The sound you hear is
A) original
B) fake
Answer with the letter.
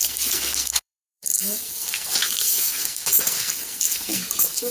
B